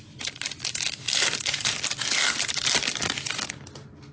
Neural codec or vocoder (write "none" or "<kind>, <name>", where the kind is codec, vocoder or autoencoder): none